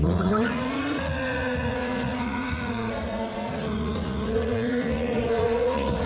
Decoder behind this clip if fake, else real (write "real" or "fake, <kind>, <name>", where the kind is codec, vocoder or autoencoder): fake, vocoder, Vocos